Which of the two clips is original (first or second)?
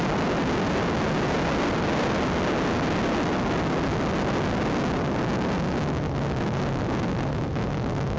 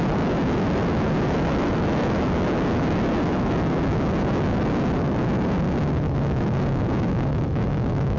first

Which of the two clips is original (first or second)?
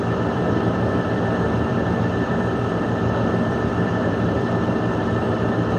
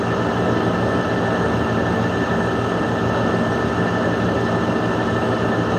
second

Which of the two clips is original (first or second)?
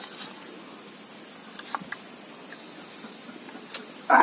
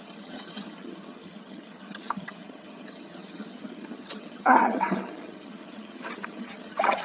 first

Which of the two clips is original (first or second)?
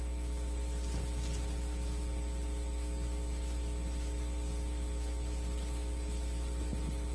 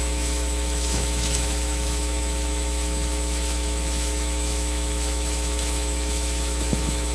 first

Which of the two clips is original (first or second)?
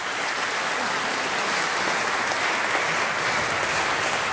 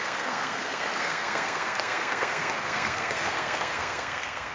first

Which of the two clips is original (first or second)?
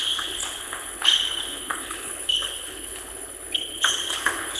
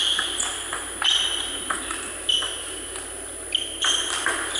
second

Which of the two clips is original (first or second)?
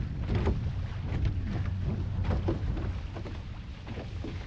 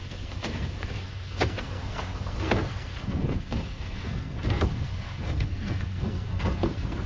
first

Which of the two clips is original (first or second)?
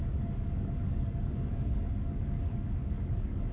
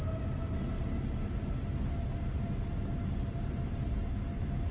second